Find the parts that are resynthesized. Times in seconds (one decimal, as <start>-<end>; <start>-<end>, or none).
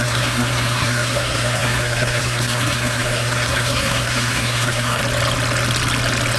0.0-5.0